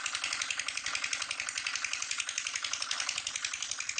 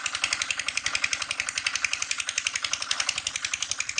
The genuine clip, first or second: first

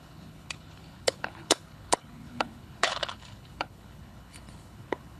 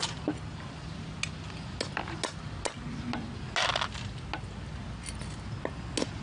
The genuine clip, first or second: second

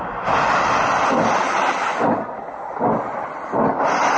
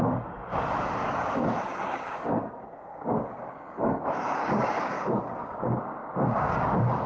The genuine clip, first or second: first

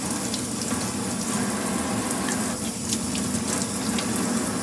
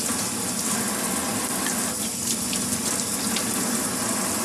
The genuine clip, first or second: first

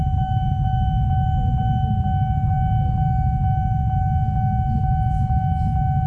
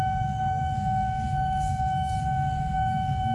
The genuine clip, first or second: first